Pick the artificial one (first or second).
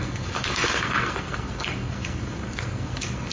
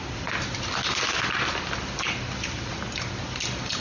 first